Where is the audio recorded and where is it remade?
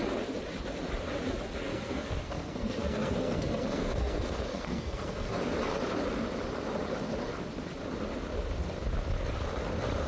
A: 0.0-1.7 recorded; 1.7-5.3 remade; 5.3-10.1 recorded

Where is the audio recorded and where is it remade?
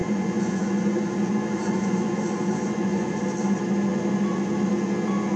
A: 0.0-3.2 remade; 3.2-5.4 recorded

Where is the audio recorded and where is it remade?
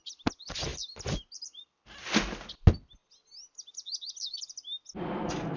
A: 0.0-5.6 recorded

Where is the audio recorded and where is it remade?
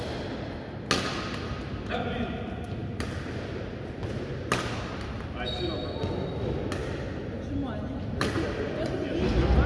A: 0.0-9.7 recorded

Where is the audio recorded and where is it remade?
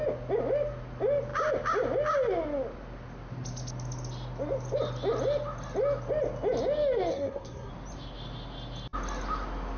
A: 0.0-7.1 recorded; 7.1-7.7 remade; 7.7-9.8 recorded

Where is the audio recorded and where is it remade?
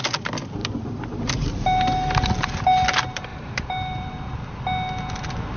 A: 0.0-0.6 recorded; 0.6-1.3 remade; 1.3-3.3 recorded; 3.3-4.3 remade; 4.3-5.6 recorded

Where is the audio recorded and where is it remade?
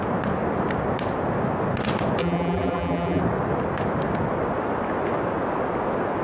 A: 0.0-2.2 recorded; 2.2-3.2 remade; 3.2-6.2 recorded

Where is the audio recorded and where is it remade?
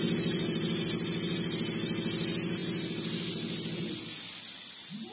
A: 0.0-5.1 recorded